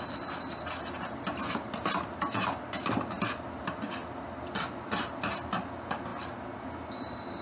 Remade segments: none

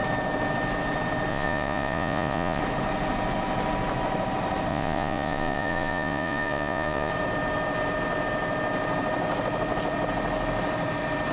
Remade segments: 1.3-2.6 (vocoder, Vocos); 4.7-7.1